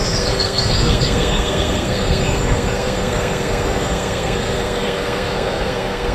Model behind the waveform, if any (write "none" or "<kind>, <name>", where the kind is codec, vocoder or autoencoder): codec, SNAC